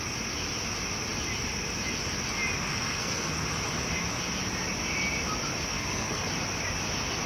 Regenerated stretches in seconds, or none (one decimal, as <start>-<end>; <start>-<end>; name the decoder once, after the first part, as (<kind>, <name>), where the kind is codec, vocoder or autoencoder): 2.7-3.3 (codec, SNAC); 5.7-6.2